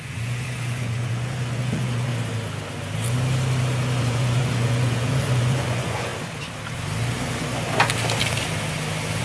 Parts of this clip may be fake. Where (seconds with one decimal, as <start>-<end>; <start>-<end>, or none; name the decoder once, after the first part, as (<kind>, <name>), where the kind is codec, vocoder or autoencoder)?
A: 0.0-2.1 (vocoder, Vocos); 4.0-6.1